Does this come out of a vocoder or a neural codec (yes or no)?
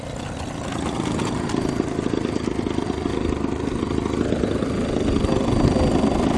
no